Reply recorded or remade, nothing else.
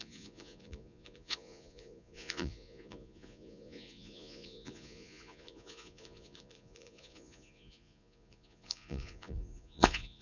remade